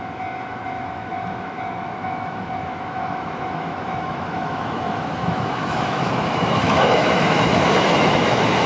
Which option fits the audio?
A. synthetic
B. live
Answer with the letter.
A